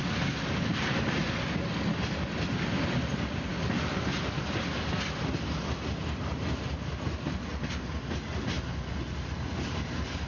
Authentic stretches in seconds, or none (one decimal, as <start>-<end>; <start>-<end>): 0.0-10.3